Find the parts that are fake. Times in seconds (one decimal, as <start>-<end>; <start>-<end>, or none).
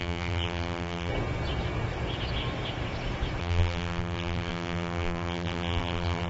0.0-1.1; 3.4-6.3